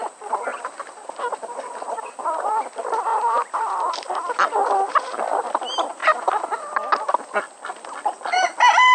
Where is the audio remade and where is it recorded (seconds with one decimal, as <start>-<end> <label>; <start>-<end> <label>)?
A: 0.0-0.5 recorded; 0.5-2.6 remade; 2.6-3.1 recorded; 3.1-3.9 remade; 3.9-8.9 recorded